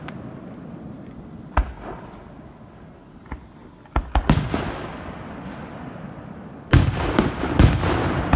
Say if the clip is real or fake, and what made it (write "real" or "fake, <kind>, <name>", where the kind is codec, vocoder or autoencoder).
real